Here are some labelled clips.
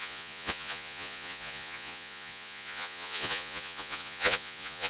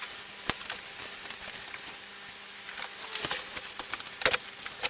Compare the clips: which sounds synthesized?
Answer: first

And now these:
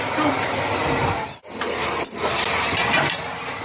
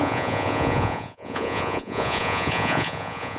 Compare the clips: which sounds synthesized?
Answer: second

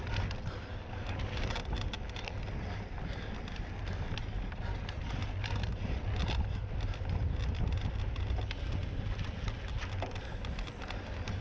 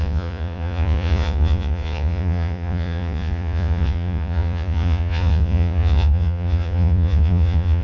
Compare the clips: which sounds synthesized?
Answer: second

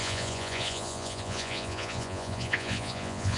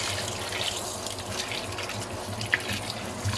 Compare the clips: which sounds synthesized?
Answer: first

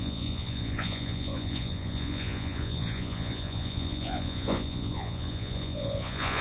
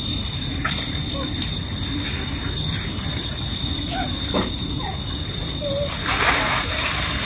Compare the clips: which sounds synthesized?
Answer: first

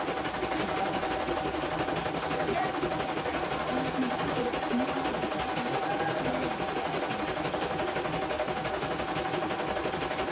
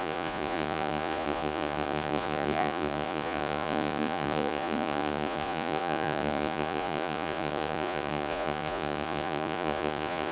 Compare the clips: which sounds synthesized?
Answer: second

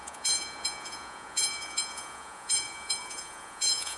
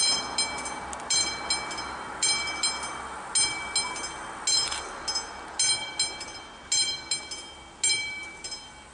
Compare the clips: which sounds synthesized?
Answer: first